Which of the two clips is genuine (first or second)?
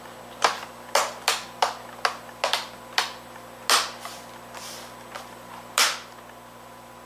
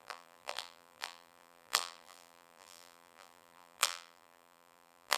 first